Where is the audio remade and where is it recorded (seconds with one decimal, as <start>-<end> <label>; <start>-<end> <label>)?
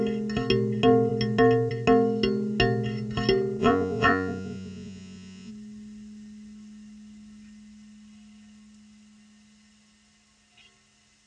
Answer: 0.0-3.6 recorded; 3.6-5.5 remade; 5.5-11.3 recorded